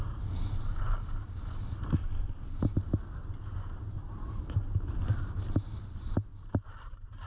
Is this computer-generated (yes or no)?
no